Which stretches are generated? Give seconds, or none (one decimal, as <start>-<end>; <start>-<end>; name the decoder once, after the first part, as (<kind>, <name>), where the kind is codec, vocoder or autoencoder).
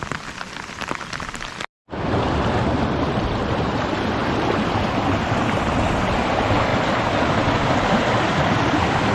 none